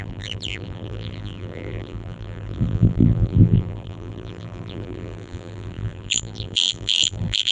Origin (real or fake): fake